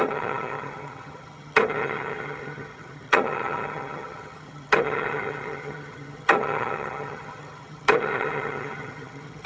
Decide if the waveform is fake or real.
fake